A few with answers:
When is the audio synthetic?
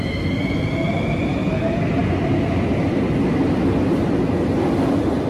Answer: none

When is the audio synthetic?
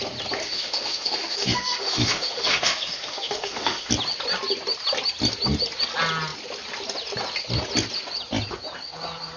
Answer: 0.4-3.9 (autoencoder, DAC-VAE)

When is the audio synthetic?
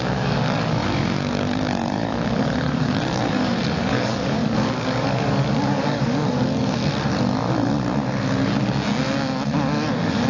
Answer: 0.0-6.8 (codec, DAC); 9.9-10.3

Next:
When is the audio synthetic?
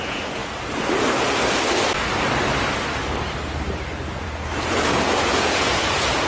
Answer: 0.0-0.4 (vocoder, Vocos); 4.1-6.3